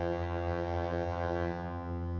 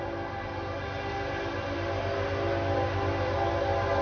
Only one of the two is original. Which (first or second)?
second